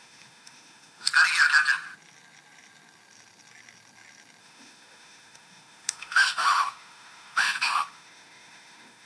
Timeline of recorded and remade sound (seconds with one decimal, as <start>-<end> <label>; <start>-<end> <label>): 0.0-1.1 remade; 1.1-4.4 recorded; 4.4-9.1 remade